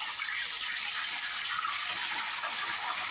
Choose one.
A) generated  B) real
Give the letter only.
B